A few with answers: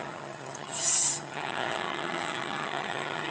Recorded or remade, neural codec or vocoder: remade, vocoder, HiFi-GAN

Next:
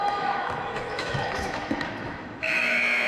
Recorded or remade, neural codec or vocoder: remade, autoencoder, DAC-VAE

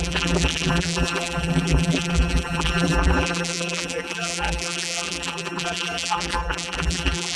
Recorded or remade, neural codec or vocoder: remade, vocoder, BigVGAN v2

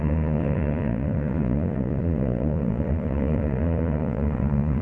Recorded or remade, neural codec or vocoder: remade, vocoder, Vocos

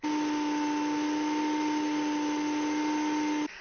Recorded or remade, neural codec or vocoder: recorded